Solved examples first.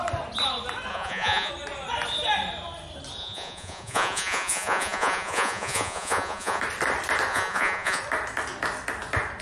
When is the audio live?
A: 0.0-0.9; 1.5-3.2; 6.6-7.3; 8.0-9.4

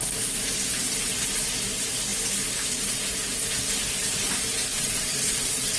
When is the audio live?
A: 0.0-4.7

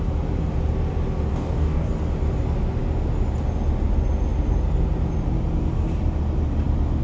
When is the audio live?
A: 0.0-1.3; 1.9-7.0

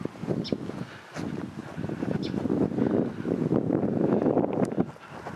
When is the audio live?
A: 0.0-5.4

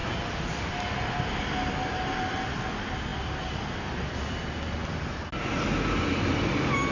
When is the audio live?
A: 0.0-6.9